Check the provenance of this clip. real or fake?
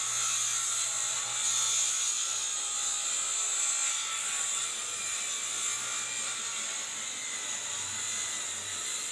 real